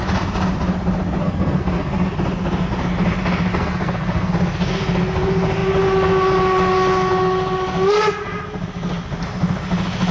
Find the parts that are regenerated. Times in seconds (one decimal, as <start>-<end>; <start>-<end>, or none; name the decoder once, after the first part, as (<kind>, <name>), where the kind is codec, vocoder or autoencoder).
1.2-2.1 (codec, SNAC); 3.5-4.3